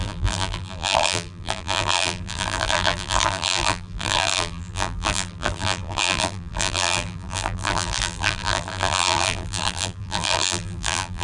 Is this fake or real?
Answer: fake